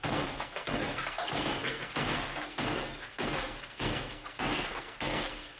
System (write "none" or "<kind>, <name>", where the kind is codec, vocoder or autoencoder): codec, SNAC